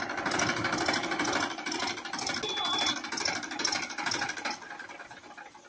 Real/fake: real